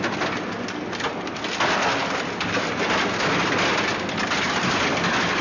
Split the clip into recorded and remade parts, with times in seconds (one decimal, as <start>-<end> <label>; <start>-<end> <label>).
0.0-5.4 recorded